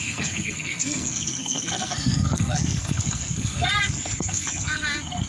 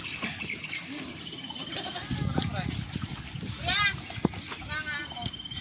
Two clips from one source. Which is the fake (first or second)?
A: first